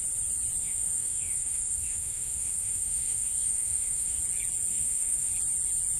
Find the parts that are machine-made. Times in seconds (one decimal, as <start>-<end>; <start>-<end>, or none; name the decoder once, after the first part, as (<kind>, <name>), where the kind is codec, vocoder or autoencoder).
0.6-4.2 (autoencoder, DAC-VAE); 4.7-5.3